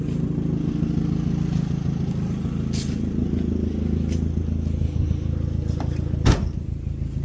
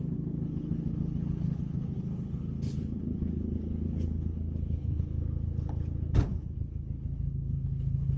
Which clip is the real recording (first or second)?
first